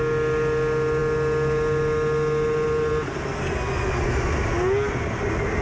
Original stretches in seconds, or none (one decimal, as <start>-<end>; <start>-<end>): 0.0-5.6